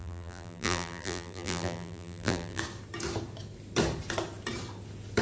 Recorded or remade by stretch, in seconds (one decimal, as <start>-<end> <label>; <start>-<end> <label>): 0.0-2.6 remade; 2.6-5.2 recorded